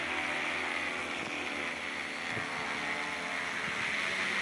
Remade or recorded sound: recorded